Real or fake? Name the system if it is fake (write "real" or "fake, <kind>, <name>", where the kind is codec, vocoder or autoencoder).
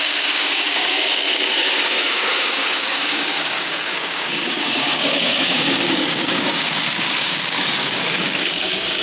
fake, codec, DAC